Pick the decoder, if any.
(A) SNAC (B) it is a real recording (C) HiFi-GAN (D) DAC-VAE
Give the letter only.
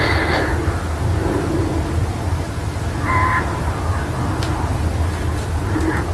B